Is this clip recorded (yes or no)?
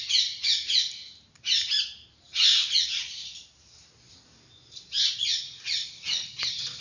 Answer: no